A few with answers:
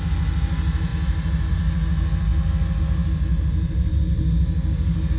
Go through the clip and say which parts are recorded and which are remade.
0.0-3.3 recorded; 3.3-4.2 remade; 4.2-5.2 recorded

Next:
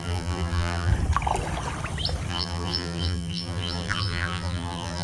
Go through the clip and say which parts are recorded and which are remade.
0.0-0.9 remade; 0.9-2.3 recorded; 2.3-5.0 remade

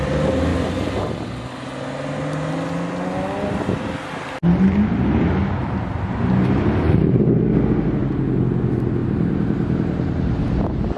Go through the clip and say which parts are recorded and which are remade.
0.0-0.5 recorded; 0.5-1.1 remade; 1.1-5.6 recorded; 5.6-7.4 remade; 7.4-9.0 recorded; 9.0-11.0 remade